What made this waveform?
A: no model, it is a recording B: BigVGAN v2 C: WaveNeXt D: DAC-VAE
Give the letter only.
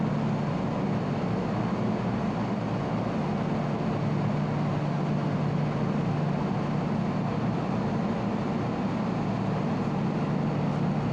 A